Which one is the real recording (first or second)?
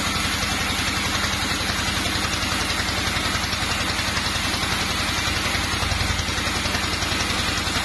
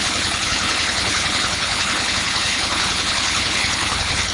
first